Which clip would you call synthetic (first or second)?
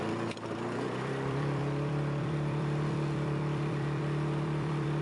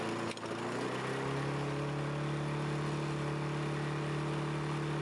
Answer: first